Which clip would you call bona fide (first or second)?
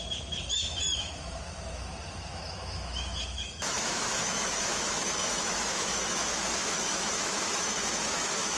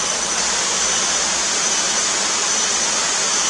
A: second